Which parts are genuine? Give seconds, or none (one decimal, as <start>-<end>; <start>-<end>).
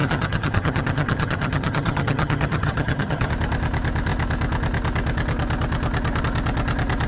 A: 3.3-7.1